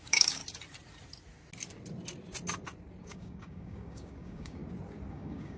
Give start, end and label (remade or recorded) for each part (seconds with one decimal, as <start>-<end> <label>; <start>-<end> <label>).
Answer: 0.0-0.4 remade; 0.4-3.0 recorded; 3.0-4.6 remade; 4.6-5.1 recorded; 5.1-5.6 remade